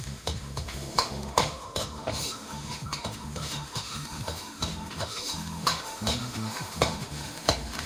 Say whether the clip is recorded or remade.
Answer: remade